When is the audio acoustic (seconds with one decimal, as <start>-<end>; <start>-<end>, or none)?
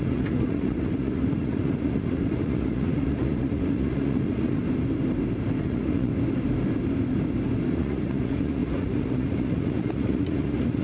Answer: 4.6-5.6; 6.1-7.7